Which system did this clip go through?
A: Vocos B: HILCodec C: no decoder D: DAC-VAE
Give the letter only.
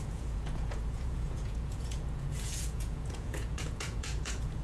A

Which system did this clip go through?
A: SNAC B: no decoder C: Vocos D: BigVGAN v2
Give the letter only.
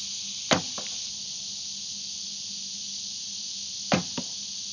B